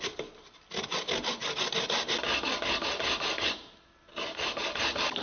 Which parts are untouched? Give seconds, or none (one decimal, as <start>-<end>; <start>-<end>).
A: 0.0-5.2